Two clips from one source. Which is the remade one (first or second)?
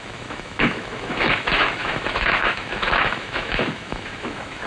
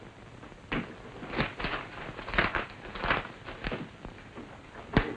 first